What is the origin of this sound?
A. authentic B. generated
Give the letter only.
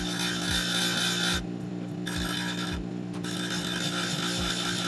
A